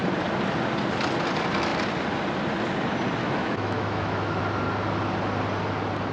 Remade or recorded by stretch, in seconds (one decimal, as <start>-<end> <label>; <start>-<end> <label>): 0.0-3.2 recorded; 3.2-4.4 remade; 4.4-6.1 recorded